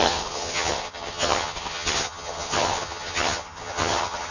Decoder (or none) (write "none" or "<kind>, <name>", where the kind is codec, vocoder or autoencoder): vocoder, HiFi-GAN